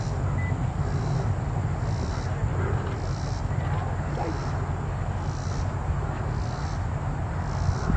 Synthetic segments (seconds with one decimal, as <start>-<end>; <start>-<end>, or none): none